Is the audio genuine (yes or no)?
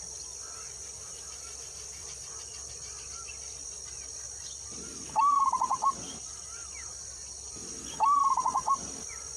yes